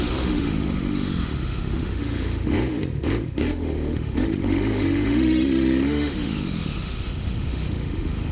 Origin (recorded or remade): remade